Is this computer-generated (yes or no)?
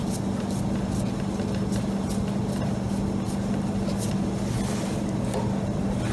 no